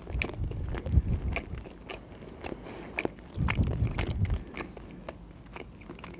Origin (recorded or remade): recorded